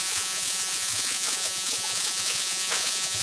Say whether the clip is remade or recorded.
remade